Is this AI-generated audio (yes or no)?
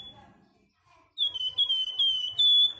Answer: no